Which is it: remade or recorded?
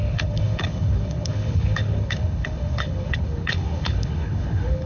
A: remade